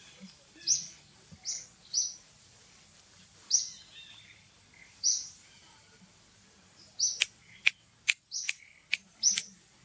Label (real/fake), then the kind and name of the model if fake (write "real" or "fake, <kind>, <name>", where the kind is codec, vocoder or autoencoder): real